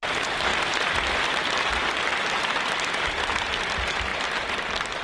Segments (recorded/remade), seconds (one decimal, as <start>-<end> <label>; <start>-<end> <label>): 0.0-0.5 recorded; 0.5-3.5 remade; 3.5-5.0 recorded